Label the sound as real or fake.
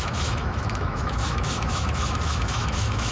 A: fake